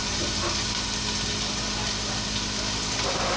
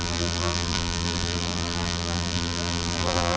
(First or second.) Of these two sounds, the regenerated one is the second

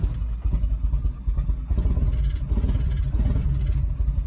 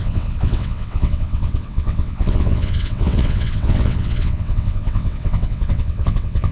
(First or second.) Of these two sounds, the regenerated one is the second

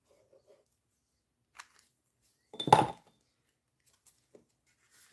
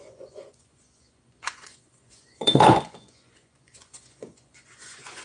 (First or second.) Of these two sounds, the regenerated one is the second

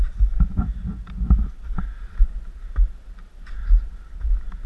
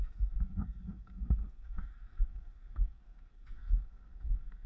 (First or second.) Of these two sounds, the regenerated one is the second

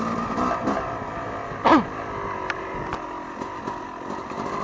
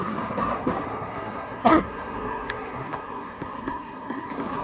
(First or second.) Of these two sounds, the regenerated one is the second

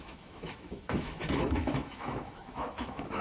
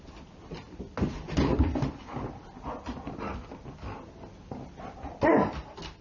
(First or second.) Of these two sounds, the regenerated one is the first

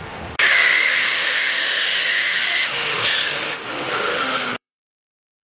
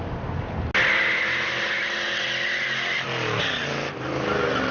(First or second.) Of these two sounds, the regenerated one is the first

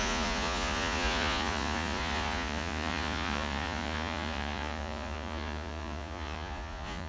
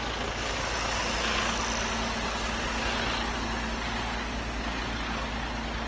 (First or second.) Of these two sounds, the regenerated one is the first